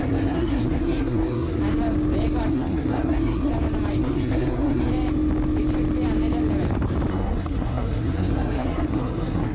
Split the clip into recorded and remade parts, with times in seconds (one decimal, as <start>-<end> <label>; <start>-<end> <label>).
0.0-1.6 remade; 1.6-2.5 recorded; 2.5-3.5 remade; 3.5-4.0 recorded; 4.0-4.9 remade; 4.9-7.1 recorded; 7.1-9.5 remade